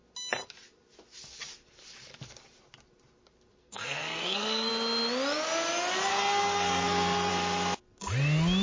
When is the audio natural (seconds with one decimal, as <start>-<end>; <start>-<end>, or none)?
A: 0.0-3.6; 4.7-6.1; 7.3-8.6